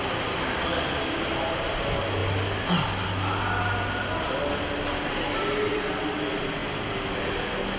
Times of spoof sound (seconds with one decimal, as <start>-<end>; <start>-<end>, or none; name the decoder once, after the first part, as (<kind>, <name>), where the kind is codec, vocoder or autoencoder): none